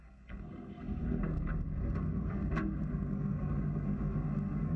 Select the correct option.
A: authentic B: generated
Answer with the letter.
B